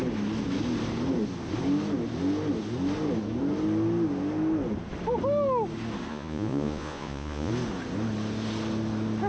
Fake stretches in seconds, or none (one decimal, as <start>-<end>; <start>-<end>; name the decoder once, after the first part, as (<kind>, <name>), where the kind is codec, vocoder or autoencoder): 6.1-7.5 (vocoder, Vocos)